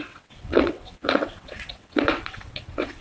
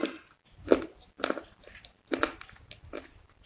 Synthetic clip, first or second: first